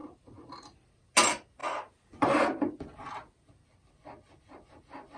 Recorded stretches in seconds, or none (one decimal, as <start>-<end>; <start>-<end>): 0.9-5.2